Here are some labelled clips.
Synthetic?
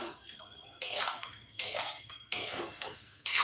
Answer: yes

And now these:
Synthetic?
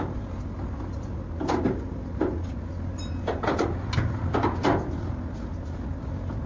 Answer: no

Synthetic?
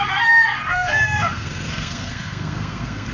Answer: yes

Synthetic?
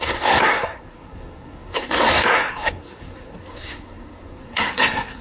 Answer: yes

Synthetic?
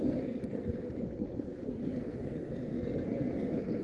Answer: yes